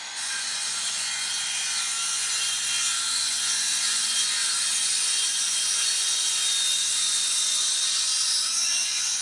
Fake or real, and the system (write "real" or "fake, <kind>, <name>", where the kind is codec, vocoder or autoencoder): fake, vocoder, Vocos